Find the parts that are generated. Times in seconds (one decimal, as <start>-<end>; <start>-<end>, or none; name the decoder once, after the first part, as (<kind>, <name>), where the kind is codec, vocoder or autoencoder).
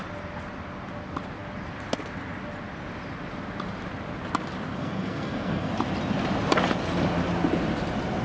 4.7-5.7 (codec, SNAC)